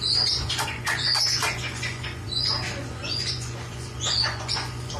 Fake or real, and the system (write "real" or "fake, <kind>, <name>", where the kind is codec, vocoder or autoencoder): fake, vocoder, Vocos